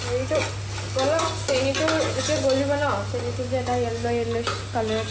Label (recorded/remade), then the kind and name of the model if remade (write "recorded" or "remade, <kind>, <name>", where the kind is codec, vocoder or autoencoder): recorded